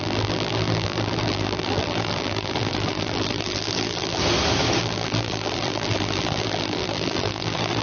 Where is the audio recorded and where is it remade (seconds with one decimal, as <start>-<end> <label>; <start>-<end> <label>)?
0.0-4.2 remade; 4.2-4.8 recorded; 4.8-7.8 remade